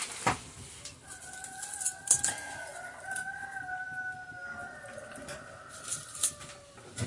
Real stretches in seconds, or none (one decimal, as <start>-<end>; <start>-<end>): 0.0-7.1